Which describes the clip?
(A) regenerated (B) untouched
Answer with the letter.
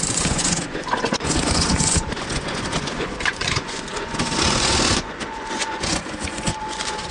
A